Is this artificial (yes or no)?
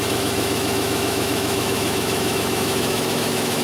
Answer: yes